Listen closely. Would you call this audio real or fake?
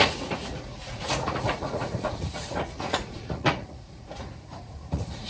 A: fake